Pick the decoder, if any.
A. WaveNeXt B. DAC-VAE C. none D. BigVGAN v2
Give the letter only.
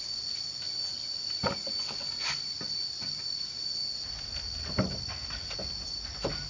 C